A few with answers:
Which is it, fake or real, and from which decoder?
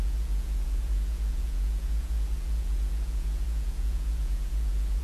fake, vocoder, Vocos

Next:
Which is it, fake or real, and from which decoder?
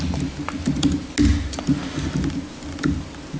real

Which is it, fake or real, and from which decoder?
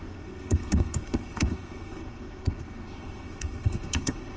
fake, codec, SNAC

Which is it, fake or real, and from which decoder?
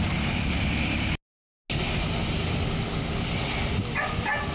real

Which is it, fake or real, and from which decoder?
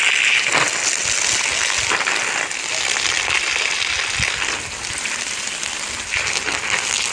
real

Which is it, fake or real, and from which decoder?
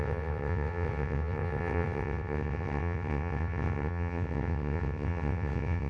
fake, vocoder, WaveNeXt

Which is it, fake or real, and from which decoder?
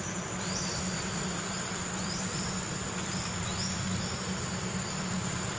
real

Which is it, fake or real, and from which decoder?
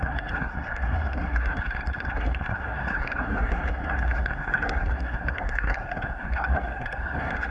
fake, codec, SNAC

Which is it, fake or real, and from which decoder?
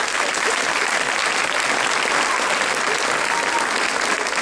real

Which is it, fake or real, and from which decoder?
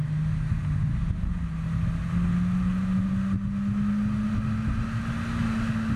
real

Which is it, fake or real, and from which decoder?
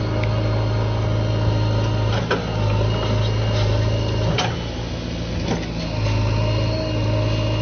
real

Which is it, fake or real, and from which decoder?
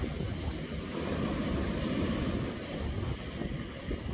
real